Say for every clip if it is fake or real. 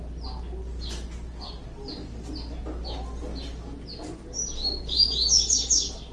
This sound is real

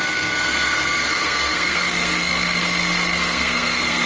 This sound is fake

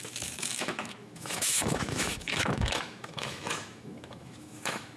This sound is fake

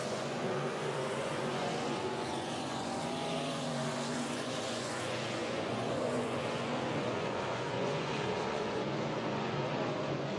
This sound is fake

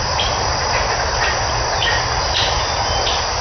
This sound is real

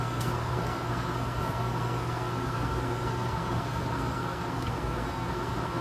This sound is fake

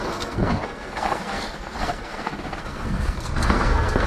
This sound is fake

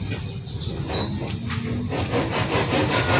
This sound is real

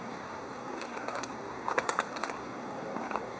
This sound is fake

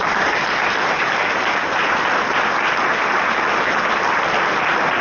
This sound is real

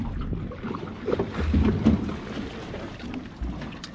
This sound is real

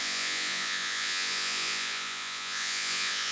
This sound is fake